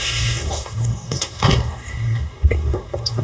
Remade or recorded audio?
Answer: remade